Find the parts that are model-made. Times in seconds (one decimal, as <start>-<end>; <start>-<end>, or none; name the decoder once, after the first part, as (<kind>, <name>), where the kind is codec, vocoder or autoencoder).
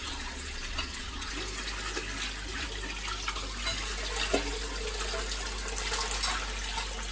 0.0-1.3 (vocoder, Vocos)